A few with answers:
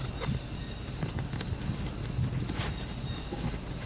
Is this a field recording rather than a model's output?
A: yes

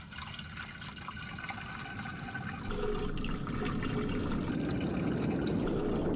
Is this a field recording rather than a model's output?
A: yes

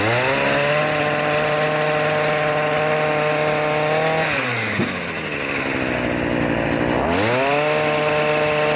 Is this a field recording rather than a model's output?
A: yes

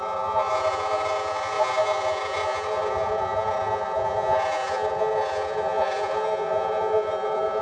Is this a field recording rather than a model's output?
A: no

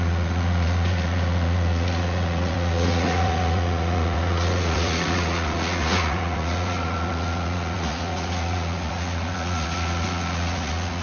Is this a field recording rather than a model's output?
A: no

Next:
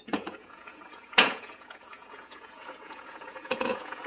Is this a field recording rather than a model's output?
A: no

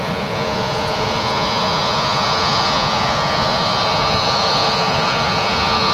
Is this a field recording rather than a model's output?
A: no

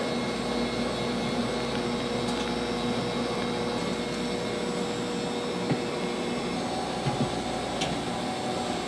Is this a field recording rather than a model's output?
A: yes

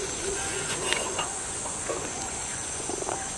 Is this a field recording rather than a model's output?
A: no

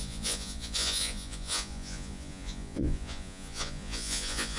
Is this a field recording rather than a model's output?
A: no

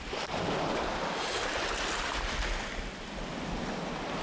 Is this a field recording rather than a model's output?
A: yes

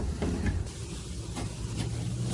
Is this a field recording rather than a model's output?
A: yes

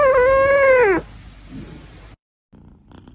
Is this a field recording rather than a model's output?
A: yes